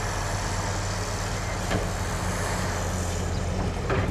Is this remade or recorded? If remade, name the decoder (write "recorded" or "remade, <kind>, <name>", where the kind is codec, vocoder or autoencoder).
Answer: recorded